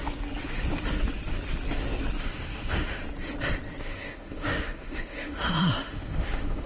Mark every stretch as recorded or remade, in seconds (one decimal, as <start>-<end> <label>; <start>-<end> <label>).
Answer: 0.0-2.2 recorded; 2.2-3.0 remade; 3.0-3.8 recorded; 3.8-6.7 remade

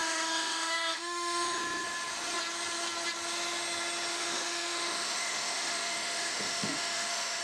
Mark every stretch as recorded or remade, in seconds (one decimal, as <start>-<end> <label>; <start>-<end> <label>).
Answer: 0.0-1.6 remade; 1.6-4.1 recorded; 4.1-7.4 remade

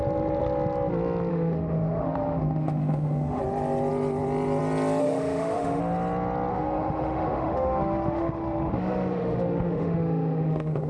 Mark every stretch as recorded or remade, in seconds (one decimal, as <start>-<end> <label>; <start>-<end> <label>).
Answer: 0.0-1.3 recorded; 1.3-3.4 remade; 3.4-5.0 recorded; 5.0-5.8 remade; 5.8-6.5 recorded; 6.5-10.9 remade

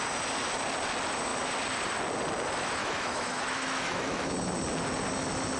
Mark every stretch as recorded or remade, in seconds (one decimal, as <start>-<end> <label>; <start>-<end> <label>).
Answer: 0.0-2.8 recorded; 2.8-4.3 remade; 4.3-5.6 recorded

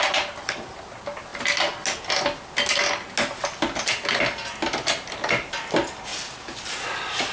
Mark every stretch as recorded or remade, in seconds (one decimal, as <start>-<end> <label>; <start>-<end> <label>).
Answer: 0.0-7.3 recorded

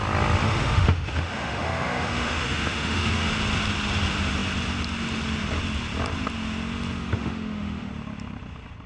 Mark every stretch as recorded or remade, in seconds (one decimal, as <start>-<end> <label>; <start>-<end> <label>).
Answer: 0.0-0.4 recorded; 0.4-3.3 remade; 3.3-7.0 recorded; 7.0-7.9 remade; 7.9-8.9 recorded

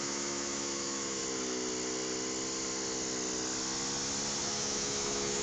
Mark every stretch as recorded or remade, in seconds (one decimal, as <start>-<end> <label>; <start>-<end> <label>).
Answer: 0.0-1.2 remade; 1.2-4.4 recorded; 4.4-5.4 remade